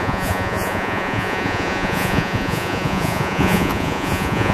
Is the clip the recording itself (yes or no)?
no